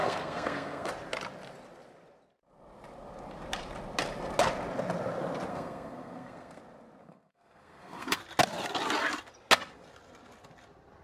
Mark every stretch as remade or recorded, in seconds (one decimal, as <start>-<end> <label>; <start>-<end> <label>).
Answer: 0.0-0.9 remade; 0.9-5.5 recorded; 5.5-6.6 remade; 6.6-7.0 recorded; 7.0-8.2 remade; 8.2-11.0 recorded